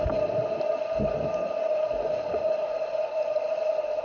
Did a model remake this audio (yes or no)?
no